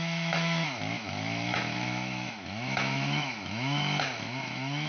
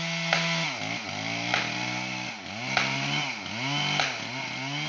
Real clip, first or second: second